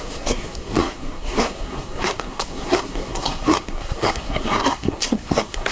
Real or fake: fake